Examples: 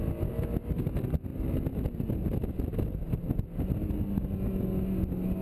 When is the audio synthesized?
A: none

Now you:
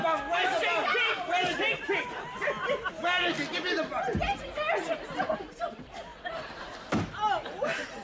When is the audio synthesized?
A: none

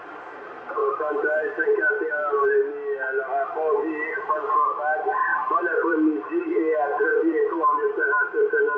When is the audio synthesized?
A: 0.8-2.5 (vocoder, BigVGAN v2); 5.3-6.4; 7.1-7.9

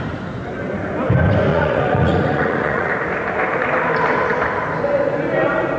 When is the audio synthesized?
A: 1.5-2.9 (vocoder, Vocos)

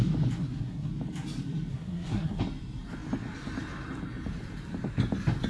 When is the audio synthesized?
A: 0.4-0.9 (codec, SNAC); 1.7-2.4

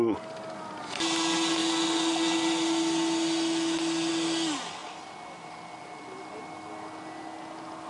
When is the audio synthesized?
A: none

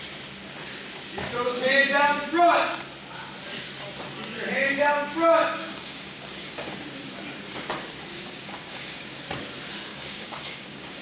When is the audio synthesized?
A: 5.6-6.8 (codec, DAC); 8.1-9.2; 9.9-11.0

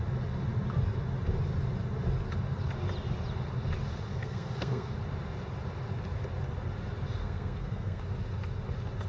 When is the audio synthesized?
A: 4.1-4.9 (codec, SNAC); 7.2-8.0